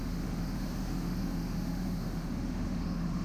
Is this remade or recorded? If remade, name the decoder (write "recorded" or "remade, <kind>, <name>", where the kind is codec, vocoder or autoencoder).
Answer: remade, autoencoder, DAC-VAE